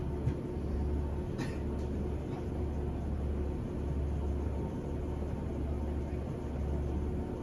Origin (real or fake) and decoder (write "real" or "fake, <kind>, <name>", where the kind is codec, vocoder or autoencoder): real